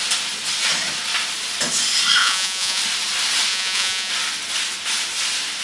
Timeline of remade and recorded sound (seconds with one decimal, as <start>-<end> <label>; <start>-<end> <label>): 0.0-2.2 recorded; 2.2-2.8 remade; 2.8-3.5 recorded; 3.5-4.1 remade; 4.1-5.6 recorded